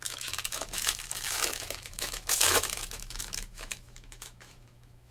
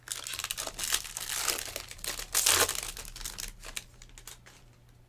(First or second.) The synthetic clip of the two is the first